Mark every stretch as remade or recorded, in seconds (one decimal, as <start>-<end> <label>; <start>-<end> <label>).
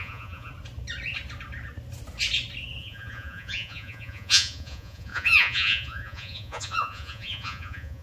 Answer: 0.0-0.5 remade; 0.5-2.8 recorded; 2.8-8.0 remade